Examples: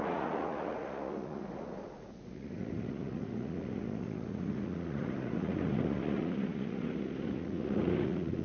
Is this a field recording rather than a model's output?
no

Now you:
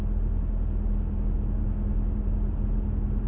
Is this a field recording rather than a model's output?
yes